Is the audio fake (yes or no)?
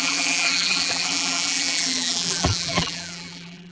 yes